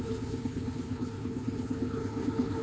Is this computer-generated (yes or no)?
yes